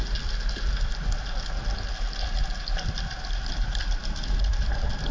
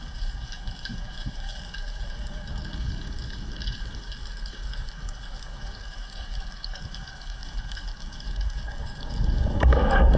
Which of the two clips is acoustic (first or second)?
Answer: first